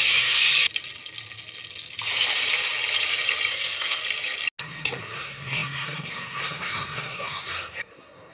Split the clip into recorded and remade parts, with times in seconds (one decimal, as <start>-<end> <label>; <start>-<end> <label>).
0.0-0.5 remade; 0.5-3.5 recorded; 3.5-4.0 remade; 4.0-4.6 recorded; 4.6-8.3 remade